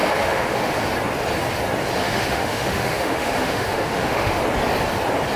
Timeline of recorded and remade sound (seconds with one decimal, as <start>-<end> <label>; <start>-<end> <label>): 0.0-0.7 remade; 0.7-2.0 recorded; 2.0-4.4 remade; 4.4-5.4 recorded